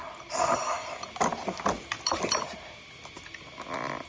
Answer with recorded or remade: recorded